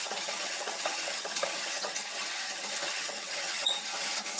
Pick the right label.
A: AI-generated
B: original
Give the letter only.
A